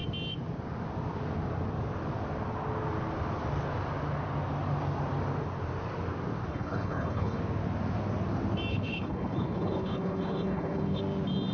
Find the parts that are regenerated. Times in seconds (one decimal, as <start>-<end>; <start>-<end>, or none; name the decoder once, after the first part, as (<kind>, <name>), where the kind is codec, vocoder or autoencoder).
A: 6.5-7.4 (codec, HILCodec); 8.7-11.0

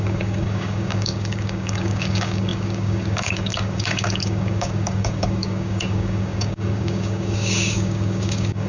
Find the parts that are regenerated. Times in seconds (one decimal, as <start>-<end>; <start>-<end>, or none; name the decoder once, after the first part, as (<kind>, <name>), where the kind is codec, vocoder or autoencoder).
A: 0.0-8.7 (codec, DAC)

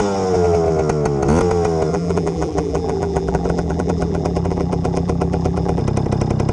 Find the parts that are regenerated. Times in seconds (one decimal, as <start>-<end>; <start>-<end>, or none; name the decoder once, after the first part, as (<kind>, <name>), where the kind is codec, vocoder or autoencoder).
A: 1.9-5.8 (vocoder, BigVGAN v2)

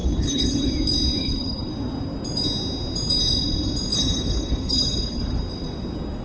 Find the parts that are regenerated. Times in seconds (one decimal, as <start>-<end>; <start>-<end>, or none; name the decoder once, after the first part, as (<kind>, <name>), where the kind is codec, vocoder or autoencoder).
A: 0.0-0.7 (codec, HILCodec); 1.2-1.7; 3.9-5.4

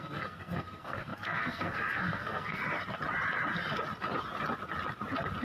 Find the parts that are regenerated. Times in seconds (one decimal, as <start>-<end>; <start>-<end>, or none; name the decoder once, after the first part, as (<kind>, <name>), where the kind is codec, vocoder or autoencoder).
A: 0.0-2.6 (codec, SNAC)

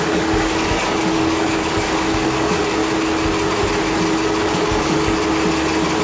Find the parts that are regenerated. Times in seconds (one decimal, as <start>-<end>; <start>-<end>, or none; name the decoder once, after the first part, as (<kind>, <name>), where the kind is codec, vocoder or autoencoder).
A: 0.0-2.8 (codec, DAC); 4.4-5.2